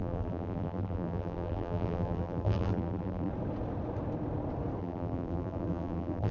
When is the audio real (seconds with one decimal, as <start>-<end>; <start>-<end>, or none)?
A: 3.3-4.8